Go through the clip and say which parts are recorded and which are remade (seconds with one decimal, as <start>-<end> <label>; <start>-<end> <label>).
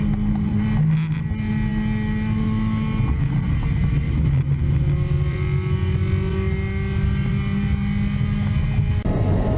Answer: 0.0-9.6 recorded